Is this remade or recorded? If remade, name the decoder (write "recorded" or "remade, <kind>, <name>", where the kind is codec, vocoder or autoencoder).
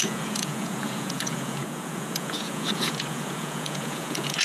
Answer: remade, vocoder, Vocos